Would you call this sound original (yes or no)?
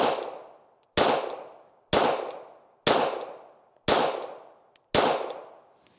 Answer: yes